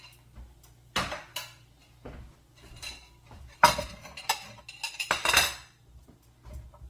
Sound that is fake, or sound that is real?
real